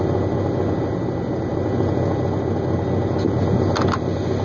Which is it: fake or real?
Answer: real